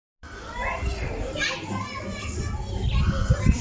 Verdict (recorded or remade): recorded